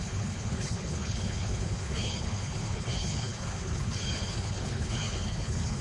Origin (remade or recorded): remade